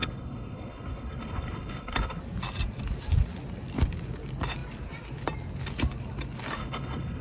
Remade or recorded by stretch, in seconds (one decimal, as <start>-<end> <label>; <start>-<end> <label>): 0.0-2.2 remade; 2.2-6.6 recorded; 6.6-7.2 remade